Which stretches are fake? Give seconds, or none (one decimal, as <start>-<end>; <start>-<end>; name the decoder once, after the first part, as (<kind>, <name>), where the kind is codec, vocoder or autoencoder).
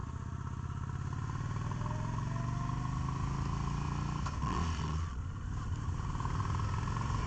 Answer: 4.4-5.2 (vocoder, Vocos)